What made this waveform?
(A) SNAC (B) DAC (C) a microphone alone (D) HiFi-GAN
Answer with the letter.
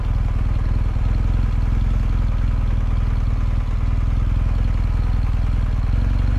C